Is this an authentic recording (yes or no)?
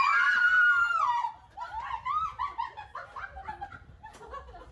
yes